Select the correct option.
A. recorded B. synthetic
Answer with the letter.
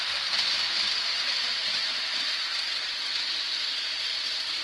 A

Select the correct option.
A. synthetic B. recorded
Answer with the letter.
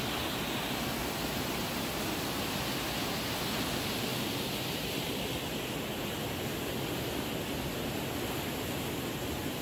B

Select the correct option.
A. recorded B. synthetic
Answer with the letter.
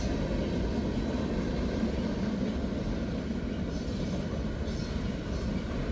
A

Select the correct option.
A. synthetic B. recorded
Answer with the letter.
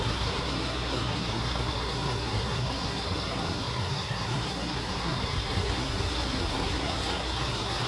A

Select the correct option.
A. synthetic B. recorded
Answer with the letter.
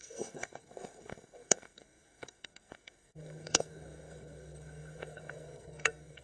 A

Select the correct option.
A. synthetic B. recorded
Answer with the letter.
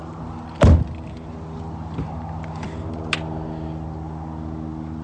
B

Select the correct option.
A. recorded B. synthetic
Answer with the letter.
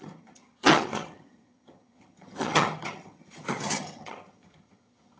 B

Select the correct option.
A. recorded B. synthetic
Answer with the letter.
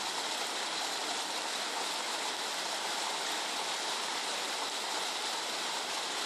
B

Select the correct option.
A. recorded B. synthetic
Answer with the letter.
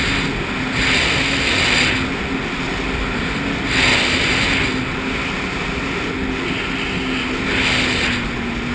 A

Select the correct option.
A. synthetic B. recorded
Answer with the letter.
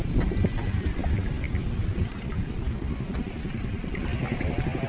B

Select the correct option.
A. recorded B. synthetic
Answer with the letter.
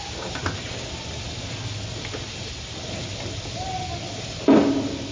A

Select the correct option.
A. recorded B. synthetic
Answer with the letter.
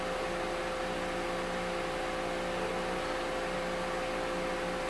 A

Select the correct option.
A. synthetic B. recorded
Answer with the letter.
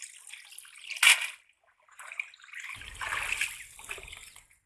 B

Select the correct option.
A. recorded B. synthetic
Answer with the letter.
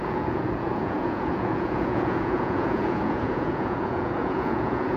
B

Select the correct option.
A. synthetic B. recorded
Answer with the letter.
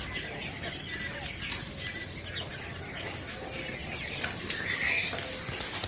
B